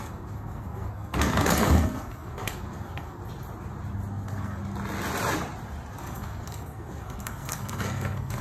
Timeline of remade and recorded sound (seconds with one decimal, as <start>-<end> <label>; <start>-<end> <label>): 0.0-3.2 remade; 3.2-4.1 recorded; 4.1-4.6 remade; 4.6-6.0 recorded; 6.0-8.4 remade